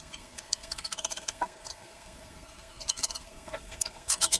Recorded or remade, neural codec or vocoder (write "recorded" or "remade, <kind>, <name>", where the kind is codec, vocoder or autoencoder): remade, codec, SNAC